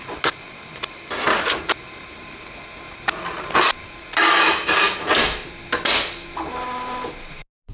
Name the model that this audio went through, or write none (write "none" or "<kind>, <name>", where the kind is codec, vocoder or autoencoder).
none